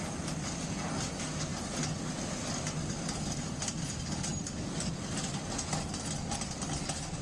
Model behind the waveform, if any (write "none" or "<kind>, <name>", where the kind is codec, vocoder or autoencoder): none